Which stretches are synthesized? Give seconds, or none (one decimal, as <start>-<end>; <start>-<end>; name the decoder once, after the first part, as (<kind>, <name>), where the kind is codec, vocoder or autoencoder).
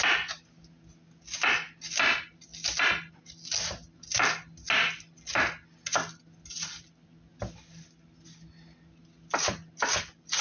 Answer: none